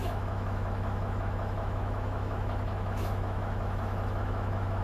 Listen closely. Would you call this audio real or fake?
fake